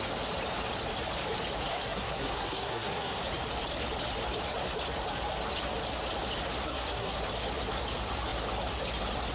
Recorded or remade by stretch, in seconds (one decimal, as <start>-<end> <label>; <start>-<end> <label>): 0.0-1.7 recorded; 1.7-3.2 remade; 3.2-6.6 recorded; 6.6-7.2 remade; 7.2-9.3 recorded